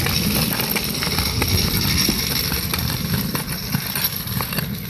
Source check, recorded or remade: recorded